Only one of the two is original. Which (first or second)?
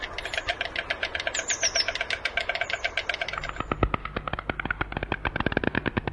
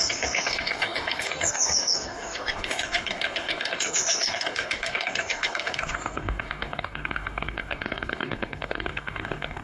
first